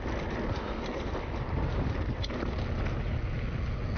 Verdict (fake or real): real